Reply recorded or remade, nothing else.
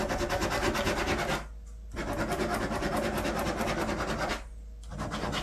recorded